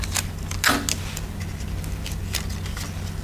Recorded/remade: recorded